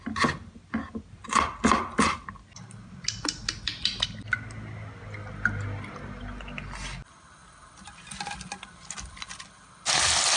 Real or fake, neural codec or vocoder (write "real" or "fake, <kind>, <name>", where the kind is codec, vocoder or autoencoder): real